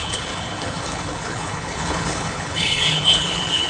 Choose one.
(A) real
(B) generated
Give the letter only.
B